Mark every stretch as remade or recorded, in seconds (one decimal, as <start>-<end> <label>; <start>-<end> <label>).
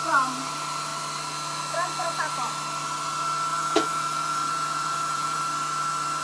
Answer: 0.0-3.5 recorded; 3.5-5.4 remade; 5.4-6.2 recorded